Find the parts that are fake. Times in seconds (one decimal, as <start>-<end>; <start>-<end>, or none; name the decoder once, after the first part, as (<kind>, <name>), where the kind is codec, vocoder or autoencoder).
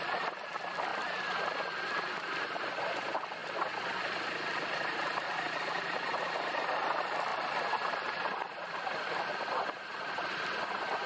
0.0-0.9 (vocoder, BigVGAN v2); 2.4-3.4; 5.3-11.1